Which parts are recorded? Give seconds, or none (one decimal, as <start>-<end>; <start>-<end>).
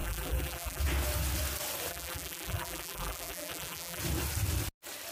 0.8-1.9; 4.0-5.1